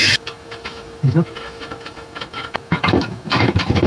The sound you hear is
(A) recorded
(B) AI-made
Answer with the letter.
B